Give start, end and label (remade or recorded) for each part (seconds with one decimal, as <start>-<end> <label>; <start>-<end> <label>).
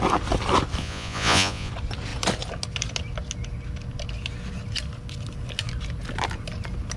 0.0-0.8 recorded; 0.8-1.7 remade; 1.7-7.0 recorded